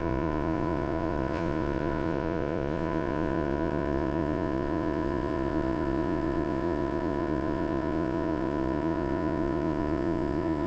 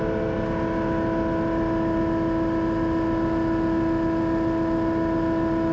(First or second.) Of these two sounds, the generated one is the first